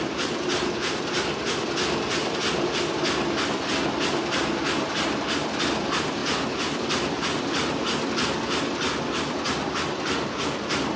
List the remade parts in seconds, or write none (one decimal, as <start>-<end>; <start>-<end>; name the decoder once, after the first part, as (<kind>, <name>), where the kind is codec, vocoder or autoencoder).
none